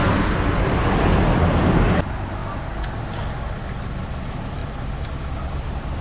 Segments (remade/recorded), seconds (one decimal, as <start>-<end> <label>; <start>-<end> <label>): 0.0-6.0 recorded